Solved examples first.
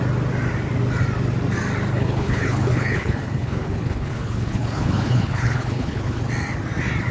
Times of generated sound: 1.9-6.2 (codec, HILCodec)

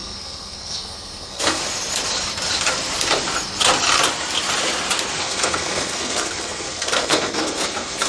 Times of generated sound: 0.0-1.6 (codec, SNAC); 5.2-8.1

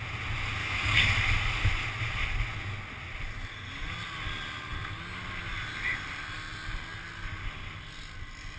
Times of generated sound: 0.6-1.1 (codec, DAC)

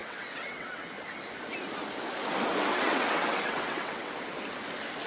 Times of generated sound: 0.0-0.9 (vocoder, WaveNeXt); 2.7-4.1

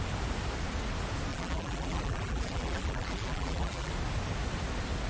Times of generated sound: 1.3-3.9 (vocoder, BigVGAN v2)

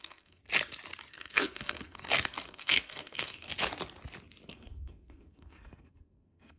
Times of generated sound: 0.0-0.4 (codec, SNAC); 1.1-3.5; 4.5-6.6